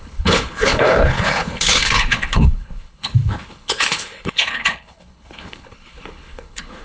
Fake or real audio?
fake